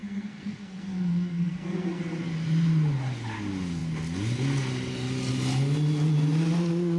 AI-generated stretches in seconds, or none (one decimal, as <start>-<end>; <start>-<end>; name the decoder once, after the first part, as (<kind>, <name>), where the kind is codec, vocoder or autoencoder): 0.0-2.0 (codec, SNAC)